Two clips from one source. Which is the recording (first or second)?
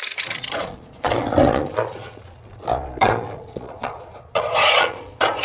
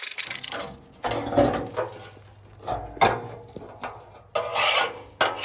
second